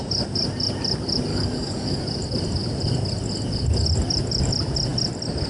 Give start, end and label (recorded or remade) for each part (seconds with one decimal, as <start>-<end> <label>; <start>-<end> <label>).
0.0-1.3 recorded; 1.3-2.0 remade; 2.0-5.5 recorded